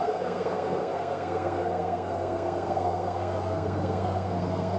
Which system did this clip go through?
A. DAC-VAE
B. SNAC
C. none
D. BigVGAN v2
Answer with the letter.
B